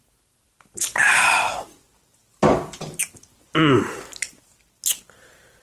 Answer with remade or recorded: recorded